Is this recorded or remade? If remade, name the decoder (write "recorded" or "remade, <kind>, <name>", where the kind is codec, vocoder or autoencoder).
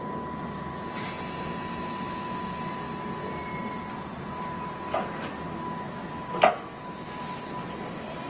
recorded